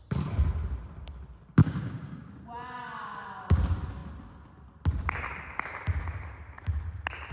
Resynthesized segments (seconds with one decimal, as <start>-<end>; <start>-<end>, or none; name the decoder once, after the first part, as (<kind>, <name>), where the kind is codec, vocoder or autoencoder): 1.6-2.3 (codec, DAC)